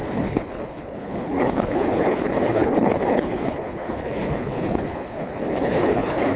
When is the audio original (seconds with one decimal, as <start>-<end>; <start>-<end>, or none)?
none